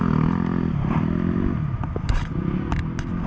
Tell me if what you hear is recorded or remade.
recorded